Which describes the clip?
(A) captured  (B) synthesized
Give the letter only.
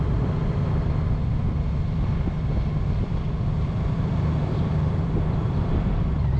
B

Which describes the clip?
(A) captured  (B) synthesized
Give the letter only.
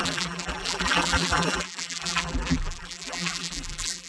B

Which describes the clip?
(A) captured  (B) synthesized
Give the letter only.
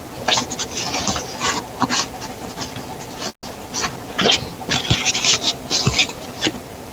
A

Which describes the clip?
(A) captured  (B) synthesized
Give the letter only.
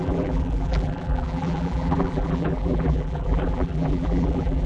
B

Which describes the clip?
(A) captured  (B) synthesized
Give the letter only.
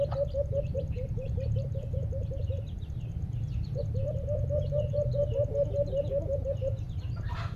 B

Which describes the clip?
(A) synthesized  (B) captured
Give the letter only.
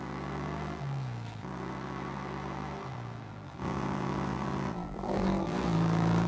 A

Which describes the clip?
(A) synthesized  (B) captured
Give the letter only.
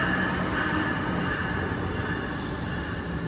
B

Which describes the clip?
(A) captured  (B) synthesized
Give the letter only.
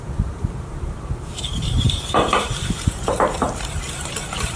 B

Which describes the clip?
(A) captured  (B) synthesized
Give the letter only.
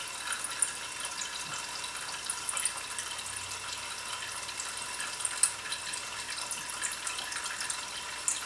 A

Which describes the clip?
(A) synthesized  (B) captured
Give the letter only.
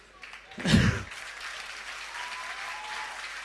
B